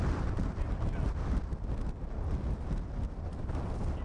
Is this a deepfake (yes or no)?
no